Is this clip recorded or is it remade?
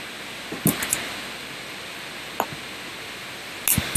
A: recorded